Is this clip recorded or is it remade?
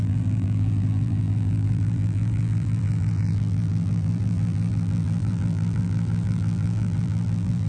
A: remade